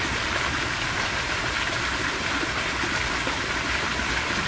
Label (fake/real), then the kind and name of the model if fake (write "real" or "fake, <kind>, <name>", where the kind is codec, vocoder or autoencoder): real